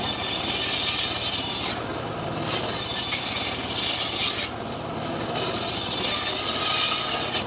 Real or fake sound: real